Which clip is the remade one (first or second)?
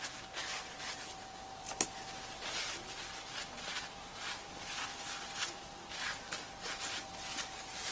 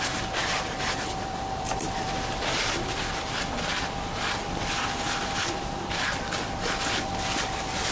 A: second